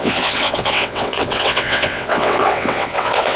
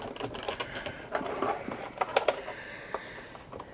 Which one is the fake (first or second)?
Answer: first